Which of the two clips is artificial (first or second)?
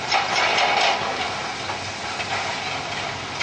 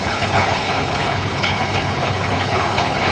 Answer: second